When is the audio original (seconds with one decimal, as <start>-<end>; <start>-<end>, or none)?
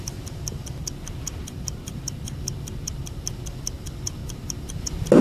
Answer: 0.0-1.4; 2.9-4.2; 4.8-5.2